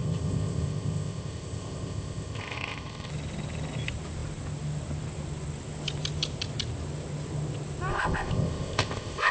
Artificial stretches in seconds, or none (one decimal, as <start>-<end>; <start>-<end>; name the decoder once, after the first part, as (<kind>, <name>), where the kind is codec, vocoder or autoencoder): 0.0-3.1 (codec, ZipCodec); 7.9-9.3